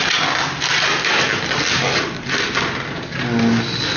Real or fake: real